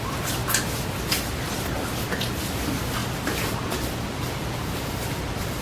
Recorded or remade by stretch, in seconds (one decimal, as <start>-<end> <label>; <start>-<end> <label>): 0.0-3.0 recorded; 3.0-5.6 remade